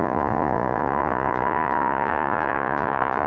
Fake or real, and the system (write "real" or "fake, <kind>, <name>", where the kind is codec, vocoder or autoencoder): fake, vocoder, Vocos